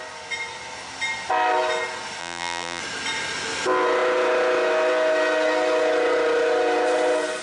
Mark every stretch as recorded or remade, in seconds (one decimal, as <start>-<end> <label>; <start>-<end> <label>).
0.0-2.2 recorded; 2.2-2.8 remade; 2.8-7.4 recorded